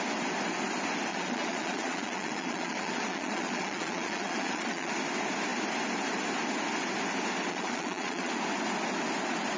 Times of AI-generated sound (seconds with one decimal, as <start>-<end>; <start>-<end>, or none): 1.1-4.9; 7.5-8.3